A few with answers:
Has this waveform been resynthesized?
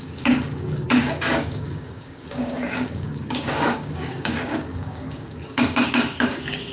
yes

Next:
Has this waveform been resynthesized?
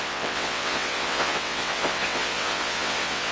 yes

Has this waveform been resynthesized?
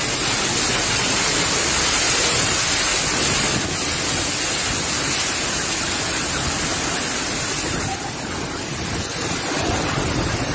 no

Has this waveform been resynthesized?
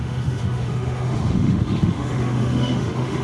yes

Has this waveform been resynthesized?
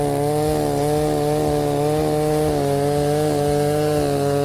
no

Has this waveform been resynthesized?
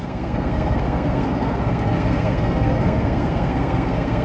yes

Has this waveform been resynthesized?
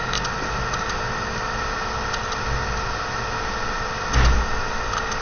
no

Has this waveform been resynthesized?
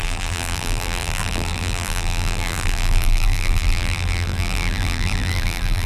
yes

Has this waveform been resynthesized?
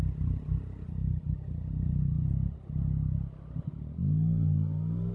no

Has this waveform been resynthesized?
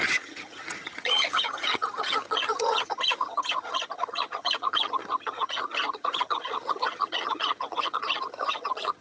yes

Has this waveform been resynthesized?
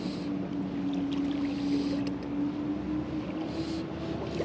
no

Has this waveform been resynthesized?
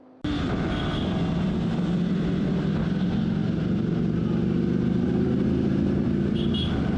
no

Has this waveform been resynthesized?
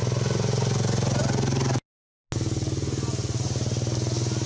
no